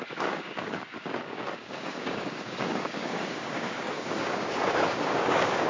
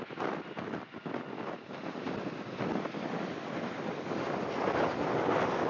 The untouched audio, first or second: second